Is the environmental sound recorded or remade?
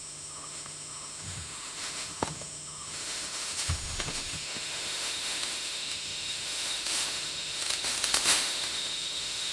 remade